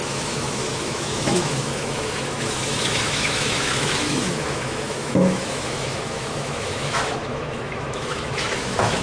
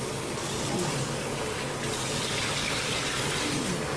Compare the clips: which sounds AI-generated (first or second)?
first